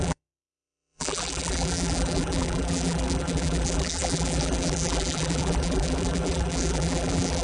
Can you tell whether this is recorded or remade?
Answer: remade